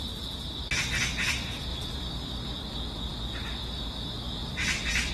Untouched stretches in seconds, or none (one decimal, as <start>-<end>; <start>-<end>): 0.0-1.7; 2.4-4.4